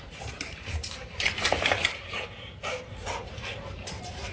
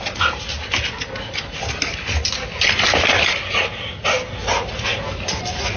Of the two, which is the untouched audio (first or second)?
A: second